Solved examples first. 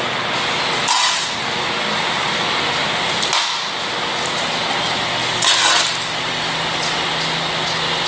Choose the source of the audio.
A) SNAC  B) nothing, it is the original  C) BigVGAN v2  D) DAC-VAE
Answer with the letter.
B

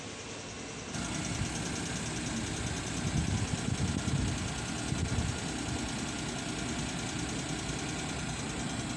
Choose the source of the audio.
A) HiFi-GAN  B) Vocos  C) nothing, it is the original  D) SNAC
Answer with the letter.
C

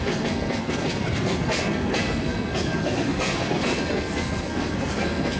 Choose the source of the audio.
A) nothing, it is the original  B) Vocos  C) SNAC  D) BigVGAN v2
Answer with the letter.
C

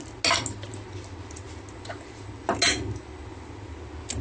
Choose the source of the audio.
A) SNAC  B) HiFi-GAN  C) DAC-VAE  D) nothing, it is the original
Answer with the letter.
D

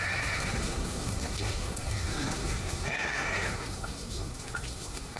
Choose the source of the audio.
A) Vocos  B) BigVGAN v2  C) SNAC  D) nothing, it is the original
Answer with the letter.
C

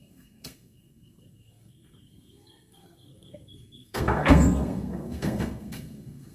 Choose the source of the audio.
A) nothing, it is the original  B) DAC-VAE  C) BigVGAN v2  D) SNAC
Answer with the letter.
D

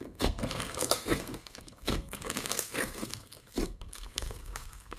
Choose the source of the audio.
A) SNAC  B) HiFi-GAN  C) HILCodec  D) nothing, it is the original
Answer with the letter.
A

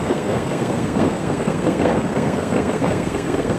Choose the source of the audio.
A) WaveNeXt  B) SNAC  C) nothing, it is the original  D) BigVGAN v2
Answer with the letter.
B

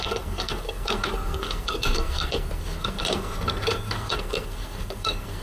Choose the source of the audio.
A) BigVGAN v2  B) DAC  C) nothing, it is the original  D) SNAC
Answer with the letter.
D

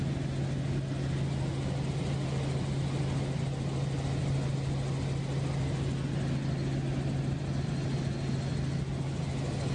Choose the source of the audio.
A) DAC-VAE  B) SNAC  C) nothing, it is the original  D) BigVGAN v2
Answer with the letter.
C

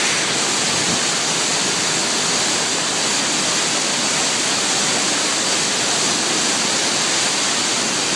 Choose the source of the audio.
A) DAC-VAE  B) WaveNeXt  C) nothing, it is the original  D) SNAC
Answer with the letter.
C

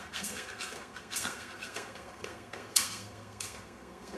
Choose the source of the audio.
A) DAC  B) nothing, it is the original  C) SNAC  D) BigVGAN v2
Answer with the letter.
C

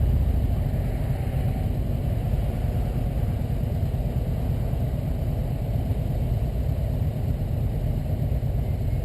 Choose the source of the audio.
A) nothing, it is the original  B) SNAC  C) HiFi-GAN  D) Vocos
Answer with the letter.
A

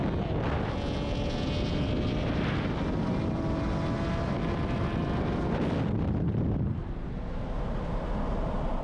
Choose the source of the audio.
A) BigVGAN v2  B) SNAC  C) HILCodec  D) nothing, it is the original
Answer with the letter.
D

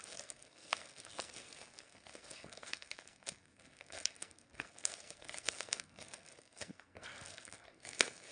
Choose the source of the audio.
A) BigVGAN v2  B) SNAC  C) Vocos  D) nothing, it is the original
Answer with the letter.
B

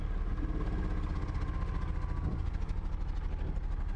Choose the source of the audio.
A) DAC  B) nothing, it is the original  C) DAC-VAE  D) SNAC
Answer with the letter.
B